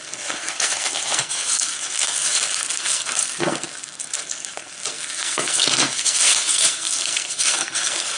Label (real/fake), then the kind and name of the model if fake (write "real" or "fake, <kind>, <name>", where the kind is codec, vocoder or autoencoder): fake, codec, SNAC